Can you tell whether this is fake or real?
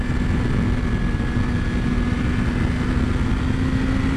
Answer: real